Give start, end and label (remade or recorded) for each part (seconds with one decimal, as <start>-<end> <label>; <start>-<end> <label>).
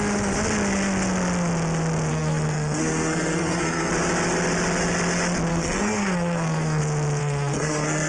0.0-2.1 recorded; 2.1-3.9 remade; 3.9-5.5 recorded; 5.5-6.8 remade; 6.8-7.2 recorded; 7.2-8.1 remade